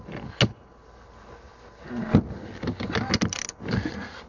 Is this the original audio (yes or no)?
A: yes